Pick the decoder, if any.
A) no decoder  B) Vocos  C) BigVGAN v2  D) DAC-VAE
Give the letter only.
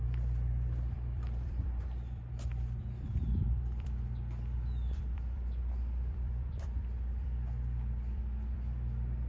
C